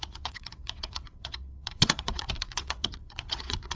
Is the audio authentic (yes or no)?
no